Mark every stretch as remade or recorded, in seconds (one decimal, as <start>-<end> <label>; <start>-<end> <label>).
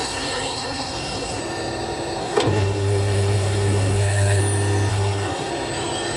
0.0-1.4 remade; 1.4-2.2 recorded; 2.2-4.4 remade; 4.4-4.9 recorded; 4.9-5.5 remade; 5.5-6.2 recorded